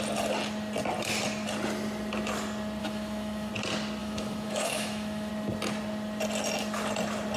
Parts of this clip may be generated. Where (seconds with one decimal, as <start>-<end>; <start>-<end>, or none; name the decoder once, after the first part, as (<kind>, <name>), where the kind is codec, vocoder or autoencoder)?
2.8-3.5 (autoencoder, DAC-VAE); 4.0-5.3